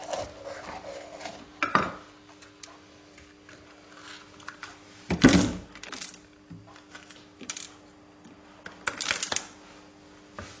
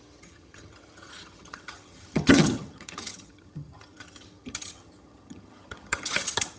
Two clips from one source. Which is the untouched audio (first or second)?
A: first